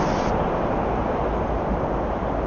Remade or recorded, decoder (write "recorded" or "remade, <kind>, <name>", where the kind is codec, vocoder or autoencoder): recorded